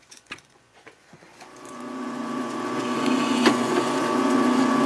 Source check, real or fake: fake